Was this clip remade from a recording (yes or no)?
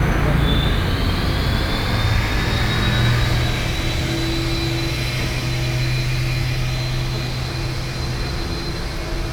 no